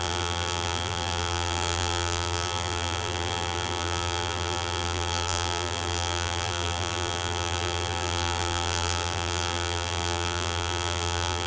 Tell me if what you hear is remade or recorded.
remade